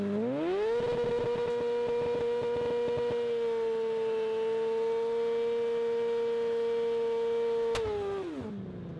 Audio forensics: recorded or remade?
recorded